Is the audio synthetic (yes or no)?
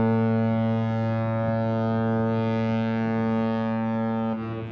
no